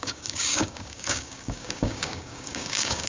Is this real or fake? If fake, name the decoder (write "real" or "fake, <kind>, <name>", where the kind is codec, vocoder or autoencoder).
fake, codec, DAC